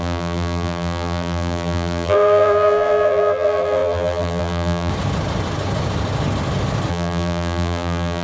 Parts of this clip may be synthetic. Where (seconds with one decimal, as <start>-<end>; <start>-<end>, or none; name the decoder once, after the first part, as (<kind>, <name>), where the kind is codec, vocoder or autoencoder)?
0.0-4.9 (vocoder, BigVGAN v2); 6.9-8.2